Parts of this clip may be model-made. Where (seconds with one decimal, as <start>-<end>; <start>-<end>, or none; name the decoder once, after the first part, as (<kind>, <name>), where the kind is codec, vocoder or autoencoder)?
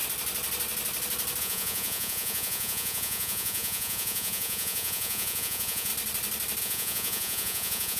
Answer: 1.4-5.9 (vocoder, Vocos); 6.6-8.0